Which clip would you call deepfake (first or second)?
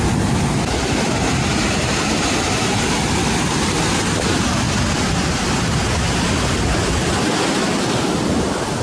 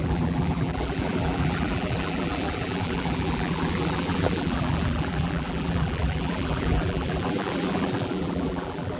second